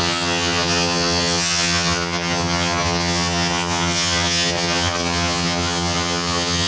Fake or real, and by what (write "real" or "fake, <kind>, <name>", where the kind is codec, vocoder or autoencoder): fake, vocoder, HiFi-GAN